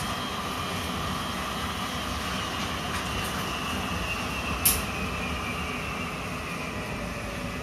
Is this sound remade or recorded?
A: recorded